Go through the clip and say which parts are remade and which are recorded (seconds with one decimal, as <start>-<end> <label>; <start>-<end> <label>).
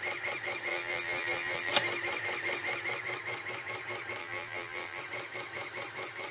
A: 0.0-0.7 recorded; 0.7-1.7 remade; 1.7-4.2 recorded; 4.2-5.0 remade; 5.0-6.3 recorded